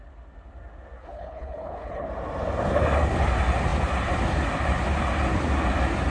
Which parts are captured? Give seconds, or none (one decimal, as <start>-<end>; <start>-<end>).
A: 0.0-1.0; 2.1-6.1